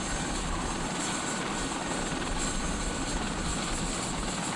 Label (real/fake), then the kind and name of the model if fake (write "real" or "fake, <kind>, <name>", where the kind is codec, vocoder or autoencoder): real